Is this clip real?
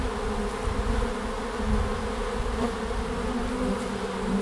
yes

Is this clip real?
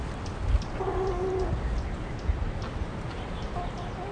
yes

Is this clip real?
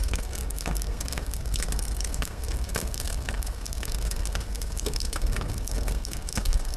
no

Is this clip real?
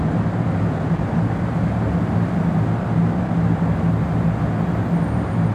yes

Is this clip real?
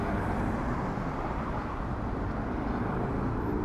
yes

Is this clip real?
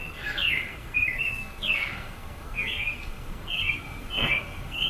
no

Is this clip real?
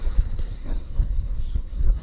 no